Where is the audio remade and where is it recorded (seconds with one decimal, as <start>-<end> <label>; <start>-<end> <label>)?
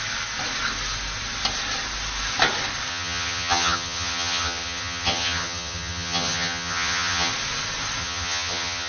0.0-2.9 recorded; 2.9-7.3 remade; 7.3-8.0 recorded; 8.0-8.9 remade